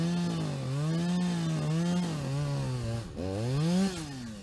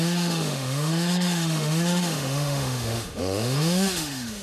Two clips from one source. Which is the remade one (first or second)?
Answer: second